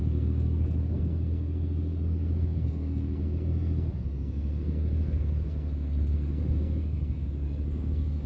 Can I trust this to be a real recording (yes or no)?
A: no